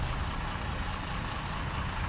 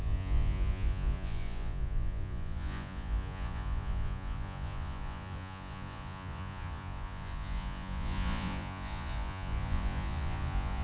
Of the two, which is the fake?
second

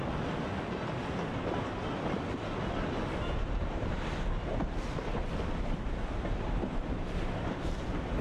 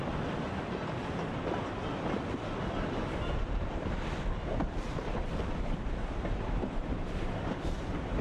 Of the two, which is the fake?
second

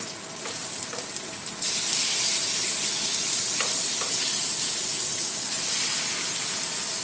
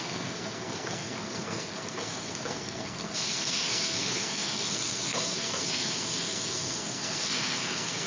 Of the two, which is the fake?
second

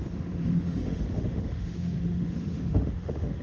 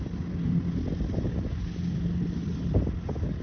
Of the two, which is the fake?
first